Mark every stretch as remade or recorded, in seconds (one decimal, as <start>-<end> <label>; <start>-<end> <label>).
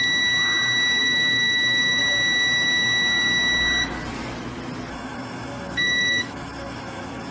0.0-1.0 recorded; 1.0-2.0 remade; 2.0-4.9 recorded; 4.9-7.3 remade